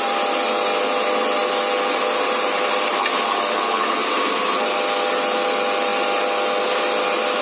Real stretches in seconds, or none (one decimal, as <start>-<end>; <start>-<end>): 0.0-7.4